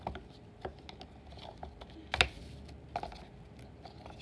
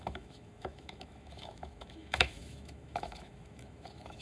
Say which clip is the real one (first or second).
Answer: first